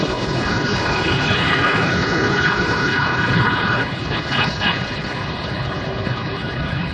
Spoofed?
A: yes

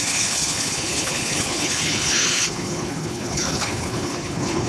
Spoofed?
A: yes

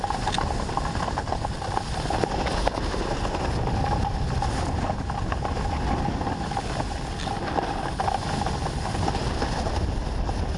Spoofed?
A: no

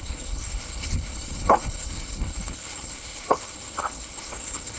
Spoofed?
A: yes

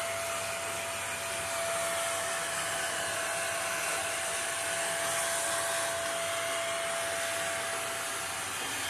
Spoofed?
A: no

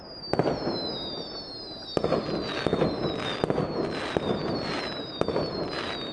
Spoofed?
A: no